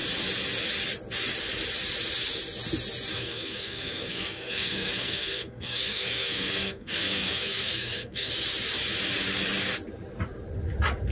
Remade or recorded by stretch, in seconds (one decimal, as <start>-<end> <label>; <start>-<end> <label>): 0.0-3.1 recorded; 3.1-8.3 remade; 8.3-11.1 recorded